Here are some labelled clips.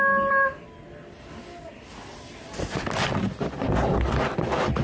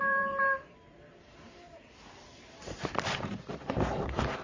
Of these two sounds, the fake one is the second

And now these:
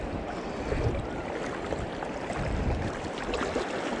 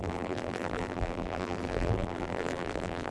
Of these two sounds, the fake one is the second